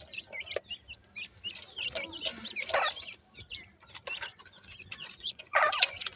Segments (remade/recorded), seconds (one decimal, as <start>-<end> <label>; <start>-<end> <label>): 0.0-4.3 recorded; 4.3-6.2 remade